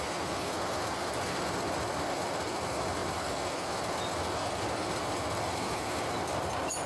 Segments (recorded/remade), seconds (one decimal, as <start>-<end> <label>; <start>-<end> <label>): 0.0-6.9 recorded